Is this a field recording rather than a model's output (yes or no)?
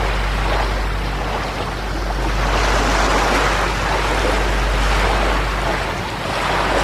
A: yes